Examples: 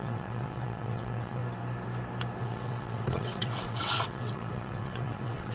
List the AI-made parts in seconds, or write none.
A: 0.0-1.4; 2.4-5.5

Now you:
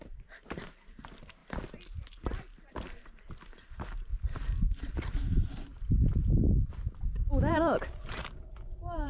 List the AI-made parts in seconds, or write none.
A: 0.0-1.4; 2.7-4.1; 4.6-5.7; 7.5-9.1

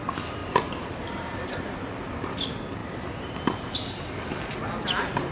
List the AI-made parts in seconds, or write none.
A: 0.4-1.7; 2.8-3.4

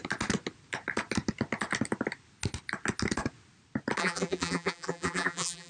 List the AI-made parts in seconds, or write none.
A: 4.0-5.7

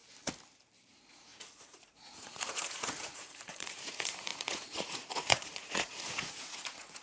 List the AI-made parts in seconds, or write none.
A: 0.9-7.0